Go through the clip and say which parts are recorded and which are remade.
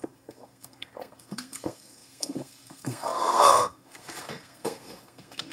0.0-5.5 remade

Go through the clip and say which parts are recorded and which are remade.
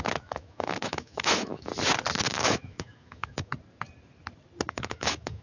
0.0-1.7 remade; 1.7-2.3 recorded; 2.3-3.5 remade; 3.5-4.7 recorded; 4.7-5.4 remade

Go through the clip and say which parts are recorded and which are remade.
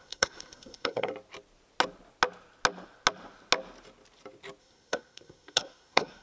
0.0-1.1 remade; 1.1-4.6 recorded; 4.6-6.2 remade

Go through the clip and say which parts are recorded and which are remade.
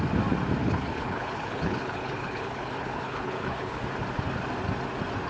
0.0-0.6 recorded; 0.6-3.8 remade; 3.8-5.3 recorded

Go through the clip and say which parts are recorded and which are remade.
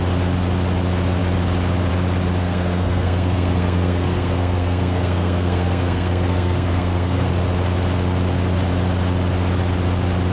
0.0-2.4 recorded; 2.4-7.3 remade; 7.3-10.3 recorded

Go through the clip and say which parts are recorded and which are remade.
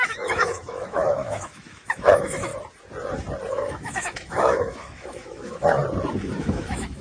0.0-2.5 remade; 2.5-3.5 recorded; 3.5-5.8 remade; 5.8-6.4 recorded; 6.4-7.0 remade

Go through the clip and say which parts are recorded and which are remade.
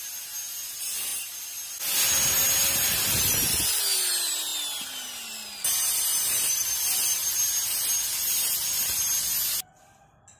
0.0-10.4 recorded